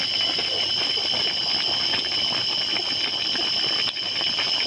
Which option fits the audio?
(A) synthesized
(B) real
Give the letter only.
B